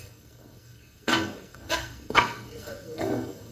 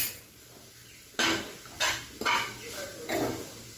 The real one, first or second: second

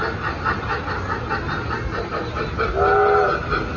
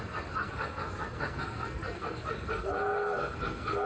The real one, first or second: first